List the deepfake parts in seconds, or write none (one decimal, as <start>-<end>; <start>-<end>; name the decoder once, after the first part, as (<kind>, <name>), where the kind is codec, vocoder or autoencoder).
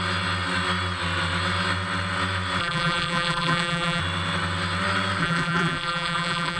2.6-4.0 (vocoder, BigVGAN v2); 5.2-6.6